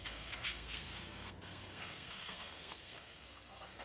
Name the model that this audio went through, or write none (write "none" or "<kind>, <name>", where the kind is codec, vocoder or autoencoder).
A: codec, SNAC